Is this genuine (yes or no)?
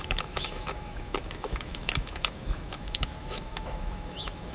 no